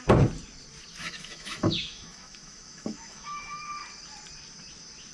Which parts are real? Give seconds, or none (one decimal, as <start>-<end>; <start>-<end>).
0.0-1.0; 3.6-5.1